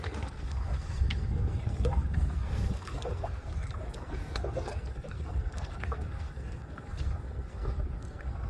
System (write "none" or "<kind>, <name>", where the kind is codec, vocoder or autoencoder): codec, SNAC